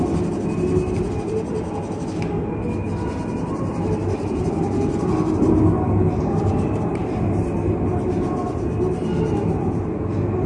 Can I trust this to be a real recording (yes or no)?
yes